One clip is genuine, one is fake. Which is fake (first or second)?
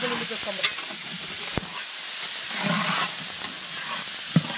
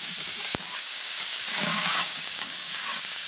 second